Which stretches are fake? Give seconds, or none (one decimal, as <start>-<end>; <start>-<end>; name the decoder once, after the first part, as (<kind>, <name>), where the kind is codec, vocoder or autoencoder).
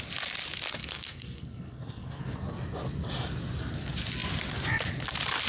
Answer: 0.8-2.2 (codec, SNAC)